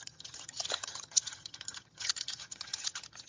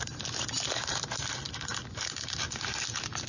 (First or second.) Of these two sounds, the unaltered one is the second